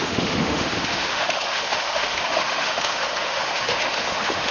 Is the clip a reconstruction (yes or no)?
yes